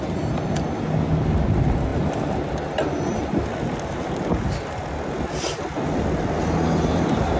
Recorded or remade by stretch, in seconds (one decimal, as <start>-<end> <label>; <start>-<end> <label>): 0.0-7.4 recorded